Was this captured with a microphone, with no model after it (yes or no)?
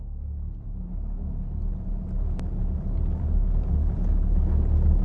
yes